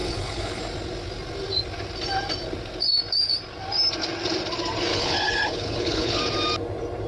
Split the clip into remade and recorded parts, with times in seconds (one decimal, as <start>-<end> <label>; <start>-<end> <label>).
0.0-0.6 remade; 0.6-4.9 recorded; 4.9-6.2 remade; 6.2-7.1 recorded